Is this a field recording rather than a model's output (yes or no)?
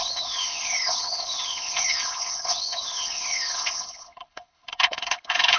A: no